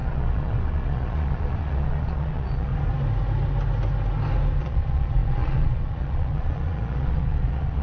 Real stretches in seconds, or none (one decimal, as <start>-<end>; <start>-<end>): 2.7-4.6